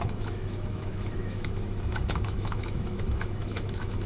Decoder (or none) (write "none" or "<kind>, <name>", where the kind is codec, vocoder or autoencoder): autoencoder, DAC-VAE